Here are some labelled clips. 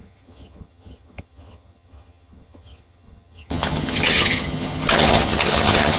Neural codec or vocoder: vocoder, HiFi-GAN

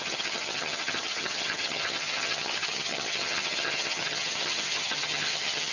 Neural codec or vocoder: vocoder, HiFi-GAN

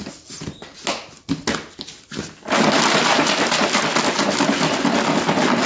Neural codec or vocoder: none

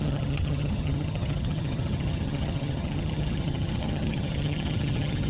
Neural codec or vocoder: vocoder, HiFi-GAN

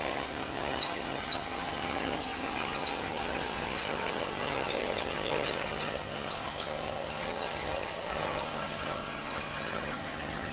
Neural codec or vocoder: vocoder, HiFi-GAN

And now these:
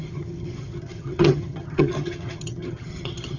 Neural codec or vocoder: vocoder, HiFi-GAN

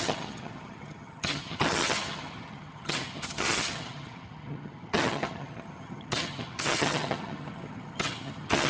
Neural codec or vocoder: vocoder, HiFi-GAN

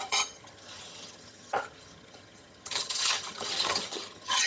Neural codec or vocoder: vocoder, HiFi-GAN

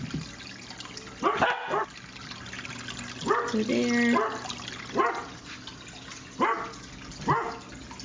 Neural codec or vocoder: none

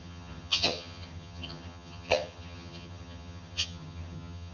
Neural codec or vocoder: vocoder, HiFi-GAN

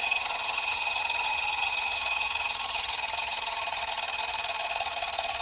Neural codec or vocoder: vocoder, HiFi-GAN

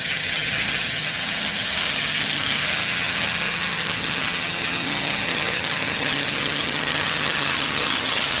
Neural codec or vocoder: vocoder, HiFi-GAN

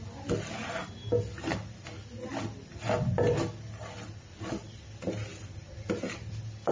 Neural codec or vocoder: none